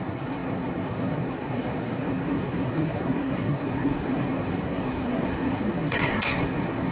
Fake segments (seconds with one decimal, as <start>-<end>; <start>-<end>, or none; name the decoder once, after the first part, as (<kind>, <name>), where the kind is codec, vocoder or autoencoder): 0.0-6.9 (codec, SNAC)